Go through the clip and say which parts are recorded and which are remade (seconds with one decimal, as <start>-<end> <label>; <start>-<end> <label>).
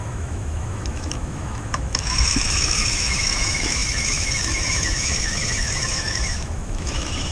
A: 0.0-7.3 remade